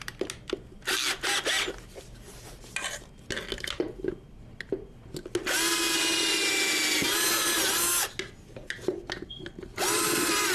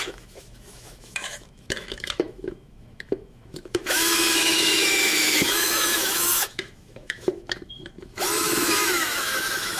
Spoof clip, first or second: second